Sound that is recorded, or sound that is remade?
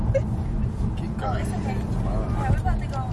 recorded